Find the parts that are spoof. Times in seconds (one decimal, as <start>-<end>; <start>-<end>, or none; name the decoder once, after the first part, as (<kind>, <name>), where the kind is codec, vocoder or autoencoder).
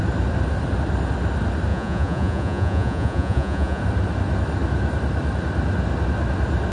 1.7-3.8 (vocoder, Vocos)